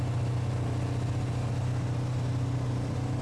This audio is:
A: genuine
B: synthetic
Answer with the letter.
A